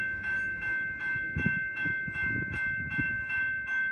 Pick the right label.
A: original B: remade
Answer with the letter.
B